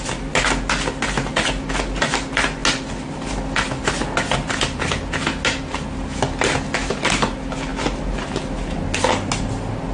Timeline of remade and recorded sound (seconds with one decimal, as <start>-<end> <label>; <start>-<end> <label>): 0.0-9.9 recorded